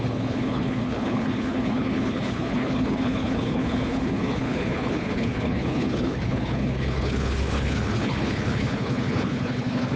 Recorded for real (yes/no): no